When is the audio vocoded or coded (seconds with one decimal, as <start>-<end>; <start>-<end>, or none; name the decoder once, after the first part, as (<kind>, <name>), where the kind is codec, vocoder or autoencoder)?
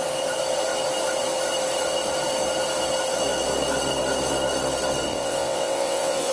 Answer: 5.1-6.3 (vocoder, WaveNeXt)